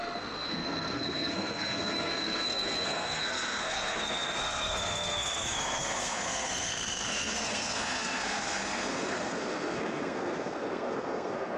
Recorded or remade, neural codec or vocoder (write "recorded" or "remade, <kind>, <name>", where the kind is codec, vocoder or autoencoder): remade, codec, SNAC